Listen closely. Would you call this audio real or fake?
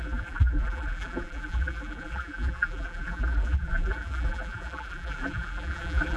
fake